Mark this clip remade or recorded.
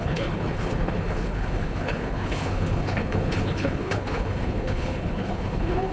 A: remade